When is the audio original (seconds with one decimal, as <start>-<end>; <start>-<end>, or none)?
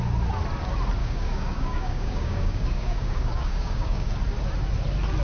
0.0-1.0; 4.1-5.2